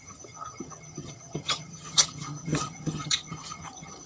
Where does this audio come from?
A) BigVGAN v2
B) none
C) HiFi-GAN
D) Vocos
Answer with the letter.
C